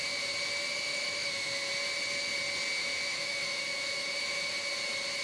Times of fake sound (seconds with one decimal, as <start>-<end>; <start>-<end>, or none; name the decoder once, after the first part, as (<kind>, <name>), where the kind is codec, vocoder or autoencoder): 0.9-1.7 (autoencoder, DAC-VAE); 2.8-4.5